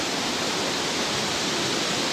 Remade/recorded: recorded